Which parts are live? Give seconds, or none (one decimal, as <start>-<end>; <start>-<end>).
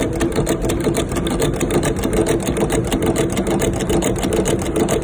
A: 0.0-5.0